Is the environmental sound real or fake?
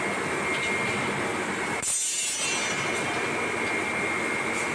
real